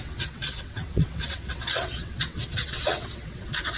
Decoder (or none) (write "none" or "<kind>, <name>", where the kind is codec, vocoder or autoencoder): vocoder, WaveNeXt